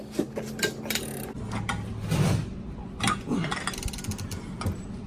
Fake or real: real